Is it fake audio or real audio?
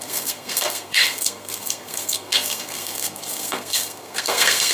fake